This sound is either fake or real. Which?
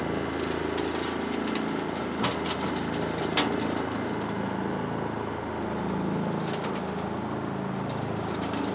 real